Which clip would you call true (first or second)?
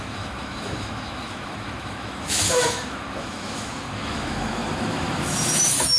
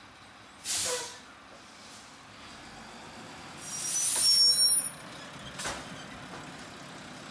second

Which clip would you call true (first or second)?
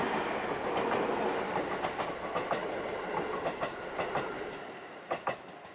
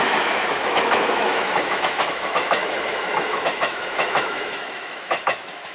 first